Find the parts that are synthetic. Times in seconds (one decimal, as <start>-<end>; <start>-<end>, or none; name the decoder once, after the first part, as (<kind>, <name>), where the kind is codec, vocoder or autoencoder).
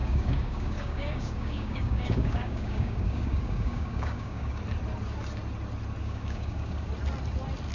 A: 0.0-4.6 (codec, DAC); 6.0-6.9